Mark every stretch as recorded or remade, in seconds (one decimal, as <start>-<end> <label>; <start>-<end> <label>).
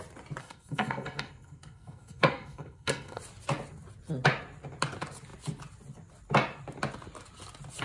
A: 0.0-0.4 recorded; 0.4-3.2 remade; 3.2-7.8 recorded